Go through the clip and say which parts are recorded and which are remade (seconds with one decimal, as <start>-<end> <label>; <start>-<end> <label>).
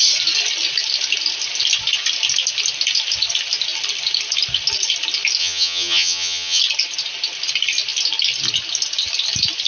0.0-5.4 recorded; 5.4-6.6 remade; 6.6-9.7 recorded